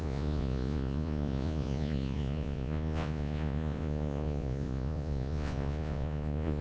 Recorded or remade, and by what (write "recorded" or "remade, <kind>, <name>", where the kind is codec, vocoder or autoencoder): remade, vocoder, Vocos